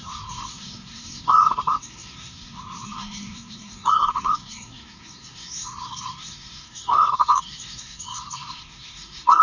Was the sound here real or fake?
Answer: fake